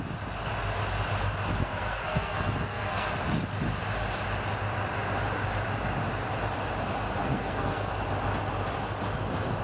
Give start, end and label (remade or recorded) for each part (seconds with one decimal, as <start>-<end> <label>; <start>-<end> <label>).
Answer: 0.0-1.6 recorded; 1.6-3.1 remade; 3.1-7.2 recorded; 7.2-7.9 remade; 7.9-9.6 recorded